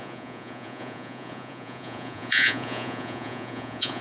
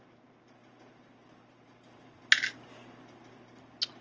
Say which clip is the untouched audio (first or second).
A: second